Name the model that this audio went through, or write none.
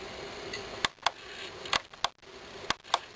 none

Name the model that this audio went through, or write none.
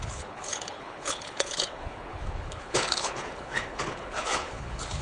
codec, HILCodec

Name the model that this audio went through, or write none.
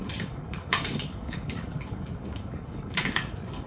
codec, DAC